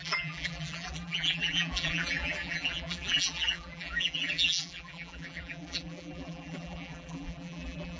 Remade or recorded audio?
remade